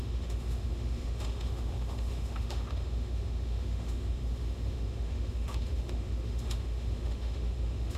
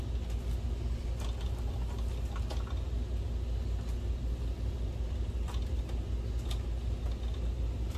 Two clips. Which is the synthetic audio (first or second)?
first